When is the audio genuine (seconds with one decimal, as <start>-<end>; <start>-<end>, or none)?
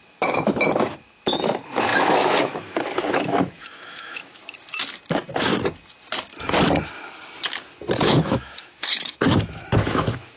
4.4-8.0